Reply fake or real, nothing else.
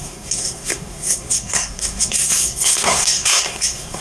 fake